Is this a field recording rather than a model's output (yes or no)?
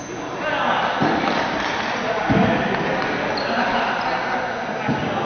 yes